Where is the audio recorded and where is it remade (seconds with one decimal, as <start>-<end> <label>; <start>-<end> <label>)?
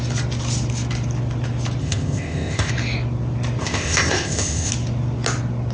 0.0-1.8 recorded; 1.8-2.7 remade; 2.7-3.6 recorded; 3.6-4.7 remade; 4.7-5.7 recorded